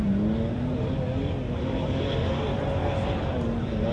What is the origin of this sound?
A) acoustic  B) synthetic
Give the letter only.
A